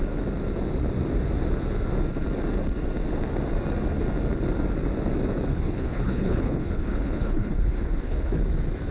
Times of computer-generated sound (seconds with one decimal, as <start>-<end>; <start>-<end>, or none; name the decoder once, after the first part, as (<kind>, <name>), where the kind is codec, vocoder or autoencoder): 5.5-8.4 (codec, HILCodec)